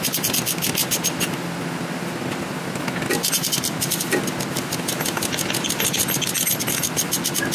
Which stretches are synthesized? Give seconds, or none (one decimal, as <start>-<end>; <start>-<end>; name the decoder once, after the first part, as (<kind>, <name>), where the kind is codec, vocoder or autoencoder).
none